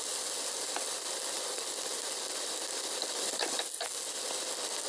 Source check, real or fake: real